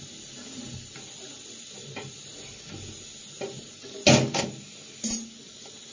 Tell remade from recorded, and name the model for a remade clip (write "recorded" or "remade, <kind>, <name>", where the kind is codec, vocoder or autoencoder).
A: recorded